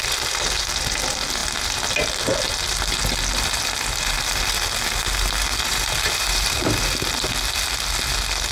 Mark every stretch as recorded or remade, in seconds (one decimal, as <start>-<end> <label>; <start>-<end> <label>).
0.0-5.6 recorded; 5.6-6.8 remade; 6.8-8.5 recorded